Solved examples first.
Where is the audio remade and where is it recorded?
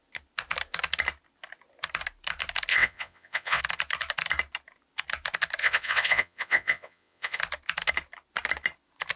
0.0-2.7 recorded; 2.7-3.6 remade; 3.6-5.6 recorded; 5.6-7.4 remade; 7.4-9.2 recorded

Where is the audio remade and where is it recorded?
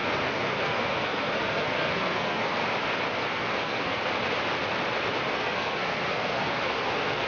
0.0-2.6 remade; 2.6-3.2 recorded; 3.2-4.0 remade; 4.0-5.3 recorded; 5.3-7.3 remade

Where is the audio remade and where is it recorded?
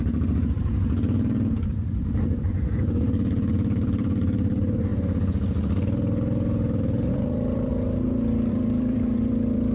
0.0-4.9 remade; 4.9-7.1 recorded; 7.1-7.7 remade; 7.7-8.5 recorded; 8.5-9.7 remade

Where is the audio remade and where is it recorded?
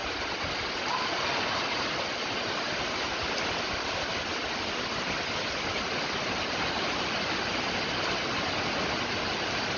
0.0-9.8 recorded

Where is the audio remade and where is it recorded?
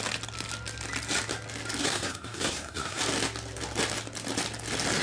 0.0-1.8 recorded; 1.8-3.0 remade; 3.0-5.0 recorded